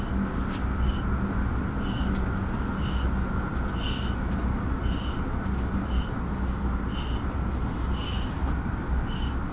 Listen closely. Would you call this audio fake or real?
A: real